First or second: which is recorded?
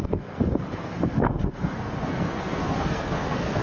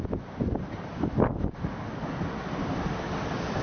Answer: second